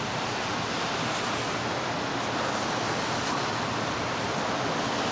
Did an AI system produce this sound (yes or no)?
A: no